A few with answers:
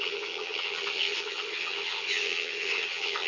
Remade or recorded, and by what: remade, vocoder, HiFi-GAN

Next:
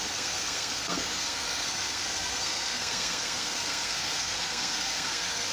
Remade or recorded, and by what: remade, codec, SNAC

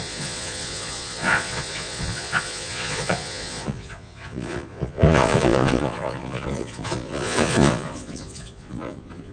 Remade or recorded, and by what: remade, vocoder, Vocos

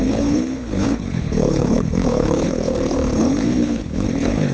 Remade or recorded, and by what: remade, codec, HILCodec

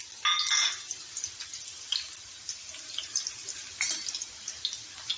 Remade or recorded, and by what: recorded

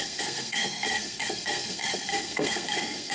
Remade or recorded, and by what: remade, codec, SNAC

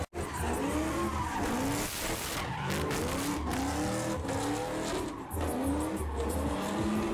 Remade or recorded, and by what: recorded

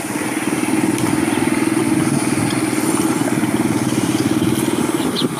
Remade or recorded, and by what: recorded